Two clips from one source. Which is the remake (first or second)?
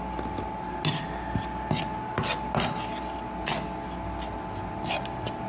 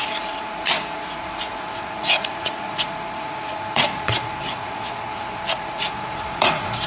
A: second